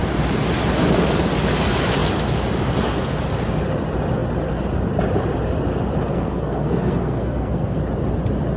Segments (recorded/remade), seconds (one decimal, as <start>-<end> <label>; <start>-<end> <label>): 0.0-6.1 recorded; 6.1-7.8 remade; 7.8-8.6 recorded